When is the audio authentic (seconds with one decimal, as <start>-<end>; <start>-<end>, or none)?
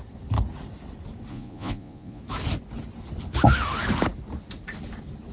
0.0-1.3; 2.2-5.3